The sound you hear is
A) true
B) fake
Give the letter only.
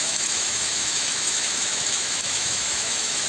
B